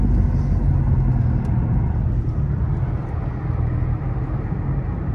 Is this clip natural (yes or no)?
yes